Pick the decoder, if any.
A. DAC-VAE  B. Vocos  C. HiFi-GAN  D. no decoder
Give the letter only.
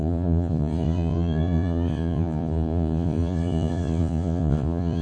B